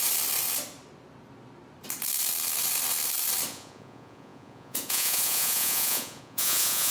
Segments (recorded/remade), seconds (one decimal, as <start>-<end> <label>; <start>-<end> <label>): 0.0-3.5 recorded; 3.5-6.9 remade